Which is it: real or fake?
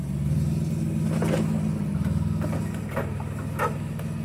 real